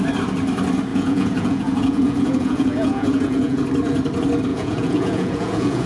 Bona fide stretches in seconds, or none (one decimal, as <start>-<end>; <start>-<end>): 0.0-0.9; 3.6-4.5